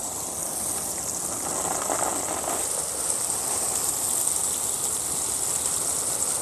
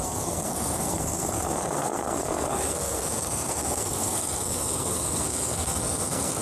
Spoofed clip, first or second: second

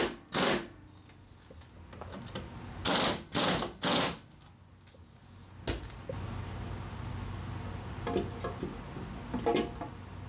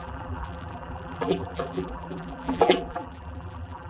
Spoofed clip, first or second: second